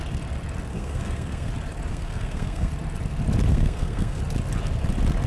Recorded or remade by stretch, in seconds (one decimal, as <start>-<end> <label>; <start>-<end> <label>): 0.0-0.7 recorded; 0.7-1.5 remade; 1.5-1.9 recorded; 1.9-2.7 remade; 2.7-3.5 recorded; 3.5-4.2 remade; 4.2-5.3 recorded